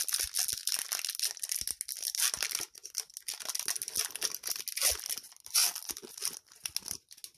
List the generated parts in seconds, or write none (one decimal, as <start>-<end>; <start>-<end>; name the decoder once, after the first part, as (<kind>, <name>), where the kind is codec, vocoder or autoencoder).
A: none